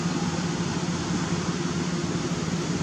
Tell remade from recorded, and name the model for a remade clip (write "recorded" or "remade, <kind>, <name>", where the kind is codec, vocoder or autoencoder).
recorded